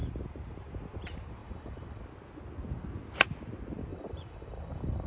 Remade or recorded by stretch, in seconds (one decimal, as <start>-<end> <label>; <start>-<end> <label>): 0.0-1.4 recorded; 1.4-2.0 remade; 2.0-3.9 recorded; 3.9-5.1 remade